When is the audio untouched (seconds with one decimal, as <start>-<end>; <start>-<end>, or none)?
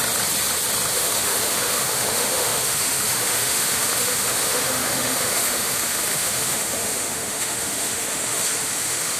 0.0-0.9